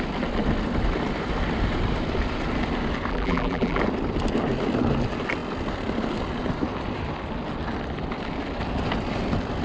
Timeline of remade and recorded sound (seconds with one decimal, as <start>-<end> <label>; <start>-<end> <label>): 0.0-3.1 recorded; 3.1-3.8 remade; 3.8-9.6 recorded